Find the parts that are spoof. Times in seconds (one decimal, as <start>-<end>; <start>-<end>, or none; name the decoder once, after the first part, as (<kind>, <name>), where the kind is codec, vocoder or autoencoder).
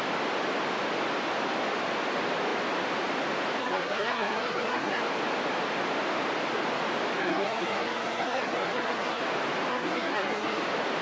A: 3.6-5.0 (codec, SNAC); 7.2-9.2; 9.7-10.6